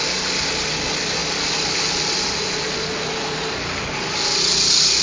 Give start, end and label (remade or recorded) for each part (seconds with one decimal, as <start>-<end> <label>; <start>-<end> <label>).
0.0-5.0 recorded